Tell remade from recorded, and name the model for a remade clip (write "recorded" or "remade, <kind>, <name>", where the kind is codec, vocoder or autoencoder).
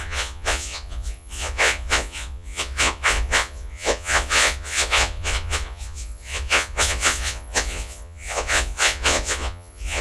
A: remade, vocoder, Vocos